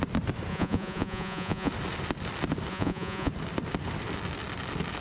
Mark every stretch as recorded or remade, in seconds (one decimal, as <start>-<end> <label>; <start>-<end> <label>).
0.0-0.5 recorded; 0.5-1.7 remade; 1.7-2.7 recorded; 2.7-3.3 remade; 3.3-5.0 recorded